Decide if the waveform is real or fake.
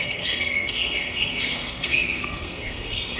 fake